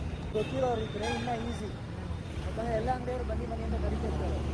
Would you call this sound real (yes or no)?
yes